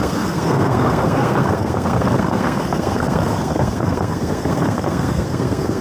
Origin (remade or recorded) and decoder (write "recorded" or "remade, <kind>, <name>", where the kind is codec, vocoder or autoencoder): remade, codec, SNAC